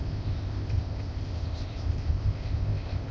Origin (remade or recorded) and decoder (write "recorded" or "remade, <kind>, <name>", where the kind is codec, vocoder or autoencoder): remade, codec, ZipCodec